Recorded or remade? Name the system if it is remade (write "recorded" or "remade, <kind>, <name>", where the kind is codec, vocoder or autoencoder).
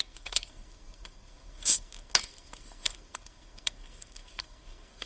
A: remade, codec, SNAC